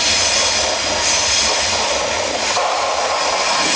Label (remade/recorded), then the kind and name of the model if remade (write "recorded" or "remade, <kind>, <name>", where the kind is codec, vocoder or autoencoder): recorded